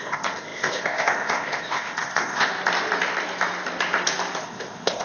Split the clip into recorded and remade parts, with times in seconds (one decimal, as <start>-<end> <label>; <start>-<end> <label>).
0.0-2.5 remade; 2.5-4.4 recorded; 4.4-5.0 remade